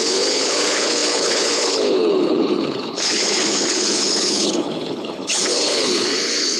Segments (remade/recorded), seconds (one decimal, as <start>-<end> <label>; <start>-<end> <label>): 0.0-6.6 remade